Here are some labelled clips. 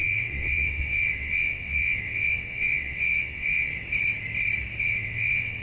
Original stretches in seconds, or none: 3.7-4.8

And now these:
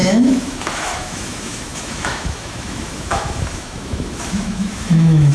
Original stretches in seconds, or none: none